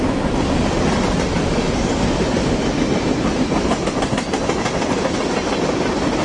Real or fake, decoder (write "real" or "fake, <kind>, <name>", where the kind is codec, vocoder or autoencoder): real